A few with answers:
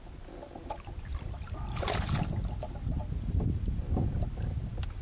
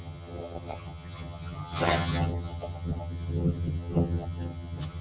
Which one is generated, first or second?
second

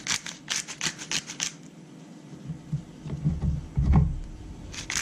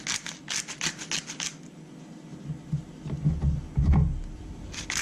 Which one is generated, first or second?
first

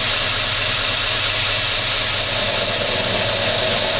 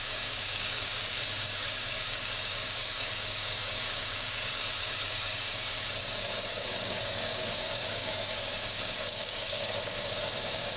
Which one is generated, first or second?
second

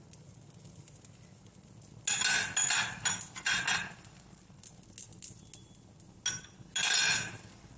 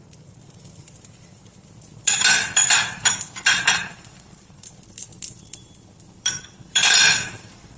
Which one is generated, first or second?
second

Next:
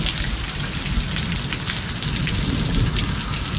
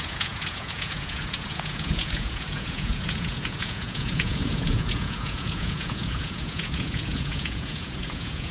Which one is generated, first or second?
second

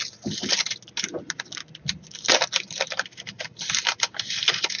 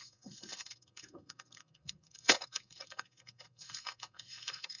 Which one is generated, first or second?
second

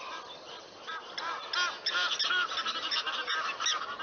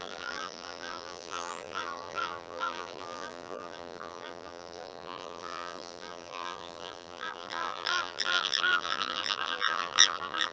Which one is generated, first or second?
second